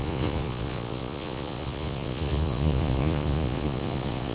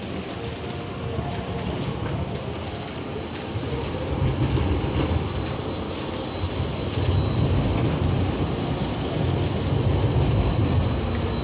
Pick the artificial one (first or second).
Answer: first